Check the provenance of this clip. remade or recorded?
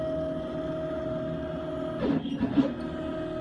recorded